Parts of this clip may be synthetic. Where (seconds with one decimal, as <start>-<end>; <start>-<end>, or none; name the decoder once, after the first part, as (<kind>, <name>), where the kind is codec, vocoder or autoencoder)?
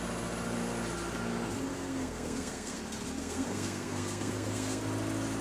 1.7-2.8 (codec, SNAC); 3.2-4.8